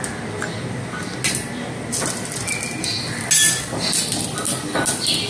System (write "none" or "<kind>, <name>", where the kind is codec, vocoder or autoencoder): none